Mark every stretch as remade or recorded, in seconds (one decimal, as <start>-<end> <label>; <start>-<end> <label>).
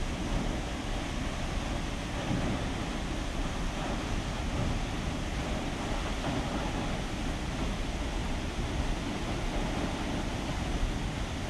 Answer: 0.0-11.5 recorded